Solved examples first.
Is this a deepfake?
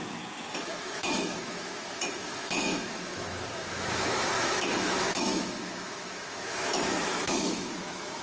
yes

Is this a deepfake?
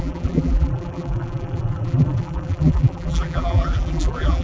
yes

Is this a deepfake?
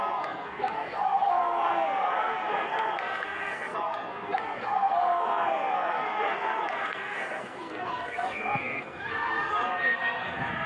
yes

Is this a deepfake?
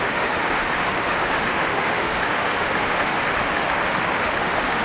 yes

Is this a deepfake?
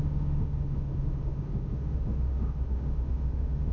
yes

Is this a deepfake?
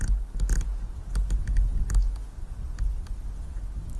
no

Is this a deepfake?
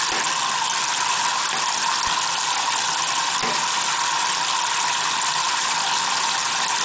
no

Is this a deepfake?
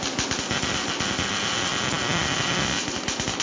no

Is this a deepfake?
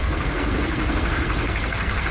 yes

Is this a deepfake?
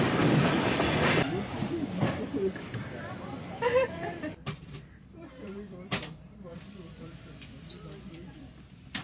yes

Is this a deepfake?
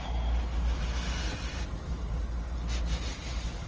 no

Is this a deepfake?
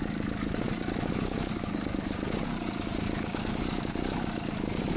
yes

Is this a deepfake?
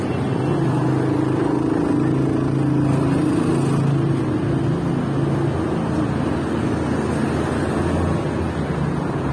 no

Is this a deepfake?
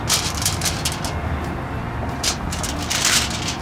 no